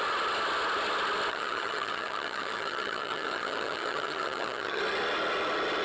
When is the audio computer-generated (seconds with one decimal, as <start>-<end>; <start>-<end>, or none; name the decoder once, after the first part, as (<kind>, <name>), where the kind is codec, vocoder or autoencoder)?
1.3-4.8 (vocoder, HiFi-GAN)